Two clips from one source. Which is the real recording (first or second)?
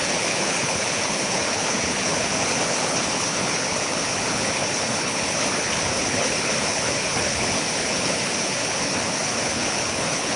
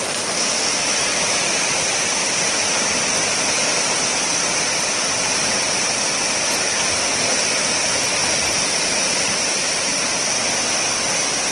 second